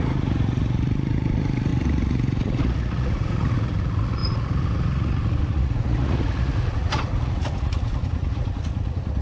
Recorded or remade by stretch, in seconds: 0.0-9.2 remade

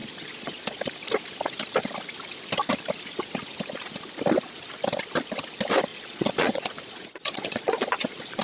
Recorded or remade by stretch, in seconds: 0.0-0.8 remade; 0.8-5.9 recorded; 5.9-8.4 remade

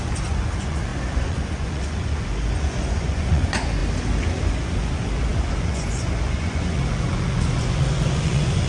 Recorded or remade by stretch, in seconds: 0.0-3.8 remade; 3.8-4.4 recorded; 4.4-8.7 remade